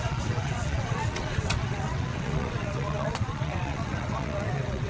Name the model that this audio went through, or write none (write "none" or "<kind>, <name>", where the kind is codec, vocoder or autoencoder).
vocoder, WaveNeXt